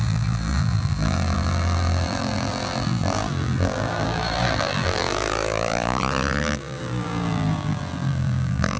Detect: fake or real fake